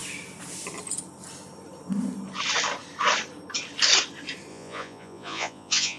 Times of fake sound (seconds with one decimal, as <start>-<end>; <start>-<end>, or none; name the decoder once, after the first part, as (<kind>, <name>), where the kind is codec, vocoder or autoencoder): 4.5-6.0 (vocoder, Vocos)